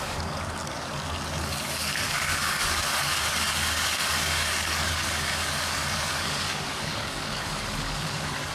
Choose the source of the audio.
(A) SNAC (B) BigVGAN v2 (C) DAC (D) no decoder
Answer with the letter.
C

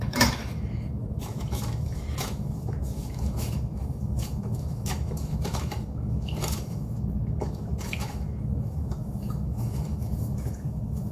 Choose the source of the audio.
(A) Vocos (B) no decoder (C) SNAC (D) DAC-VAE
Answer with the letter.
D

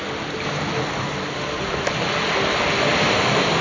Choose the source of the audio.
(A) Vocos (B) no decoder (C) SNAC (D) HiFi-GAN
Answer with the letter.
B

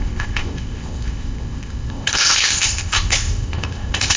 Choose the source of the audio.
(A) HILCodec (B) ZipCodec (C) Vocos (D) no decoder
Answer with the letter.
B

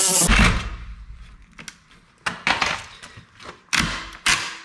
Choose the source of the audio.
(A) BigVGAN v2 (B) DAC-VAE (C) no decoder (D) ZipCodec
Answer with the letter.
C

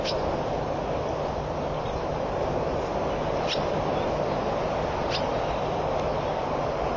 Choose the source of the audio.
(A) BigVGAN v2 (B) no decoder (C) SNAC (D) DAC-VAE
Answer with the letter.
B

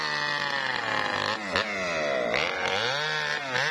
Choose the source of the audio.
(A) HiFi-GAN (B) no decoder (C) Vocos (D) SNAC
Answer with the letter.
B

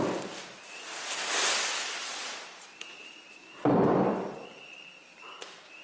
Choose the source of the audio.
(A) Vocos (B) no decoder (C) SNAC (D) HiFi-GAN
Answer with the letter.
B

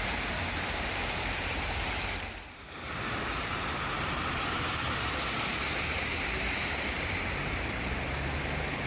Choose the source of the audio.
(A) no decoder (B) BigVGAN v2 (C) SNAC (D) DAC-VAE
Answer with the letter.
B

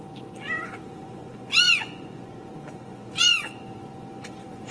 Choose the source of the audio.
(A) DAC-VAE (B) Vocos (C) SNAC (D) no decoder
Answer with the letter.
B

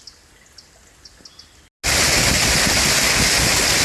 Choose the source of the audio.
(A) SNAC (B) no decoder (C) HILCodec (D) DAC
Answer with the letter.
B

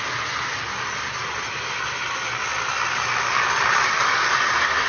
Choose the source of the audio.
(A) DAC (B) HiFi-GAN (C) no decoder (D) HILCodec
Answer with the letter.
C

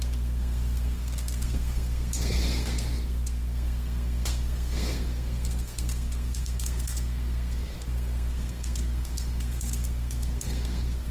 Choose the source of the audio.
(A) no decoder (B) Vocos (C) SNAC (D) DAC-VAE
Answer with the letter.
C